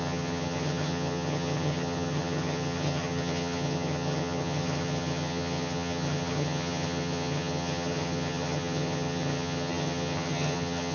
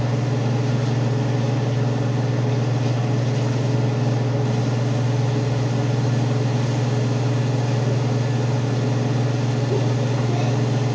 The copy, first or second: first